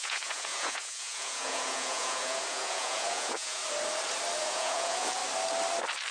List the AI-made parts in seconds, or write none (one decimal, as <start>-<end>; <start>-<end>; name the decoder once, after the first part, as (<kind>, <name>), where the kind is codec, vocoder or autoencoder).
0.0-3.6 (vocoder, Vocos); 4.4-5.2